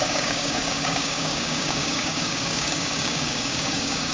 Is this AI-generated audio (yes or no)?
yes